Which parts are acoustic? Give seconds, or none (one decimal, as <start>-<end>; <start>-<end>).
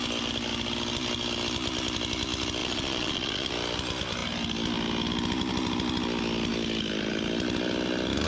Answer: 0.0-2.6; 3.5-8.3